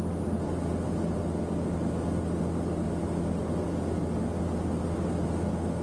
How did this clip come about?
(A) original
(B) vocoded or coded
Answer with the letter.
A